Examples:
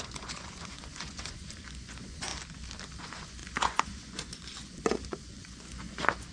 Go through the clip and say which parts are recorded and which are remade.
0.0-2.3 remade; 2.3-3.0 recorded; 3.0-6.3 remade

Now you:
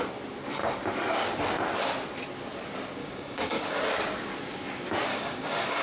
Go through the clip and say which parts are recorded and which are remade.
0.0-3.0 recorded; 3.0-3.8 remade; 3.8-5.1 recorded; 5.1-5.8 remade

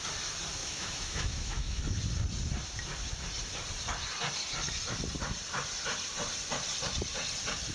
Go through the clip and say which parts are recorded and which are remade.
0.0-0.6 recorded; 0.6-1.8 remade; 1.8-7.7 recorded

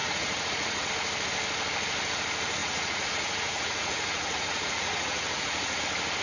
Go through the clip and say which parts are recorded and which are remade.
0.0-0.9 remade; 0.9-2.6 recorded; 2.6-5.8 remade; 5.8-6.2 recorded

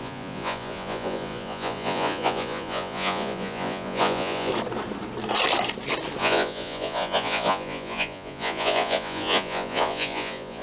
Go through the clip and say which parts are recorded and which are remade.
0.0-4.5 remade; 4.5-6.2 recorded; 6.2-10.6 remade

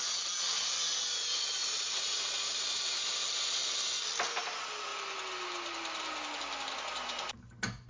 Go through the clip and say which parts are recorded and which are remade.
0.0-1.6 recorded; 1.6-2.8 remade; 2.8-7.9 recorded